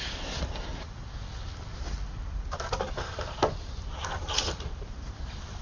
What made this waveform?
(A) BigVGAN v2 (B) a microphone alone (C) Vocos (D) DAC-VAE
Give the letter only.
A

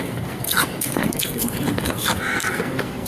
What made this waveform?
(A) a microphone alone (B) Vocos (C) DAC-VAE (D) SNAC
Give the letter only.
D